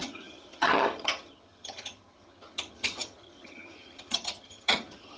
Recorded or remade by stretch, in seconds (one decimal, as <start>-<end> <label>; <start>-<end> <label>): 0.0-5.2 remade